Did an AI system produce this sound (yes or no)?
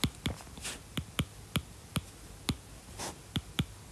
no